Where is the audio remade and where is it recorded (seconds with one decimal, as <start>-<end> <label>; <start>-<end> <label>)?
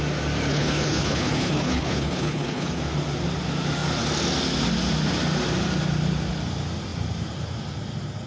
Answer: 0.0-0.5 recorded; 0.5-2.8 remade; 2.8-8.3 recorded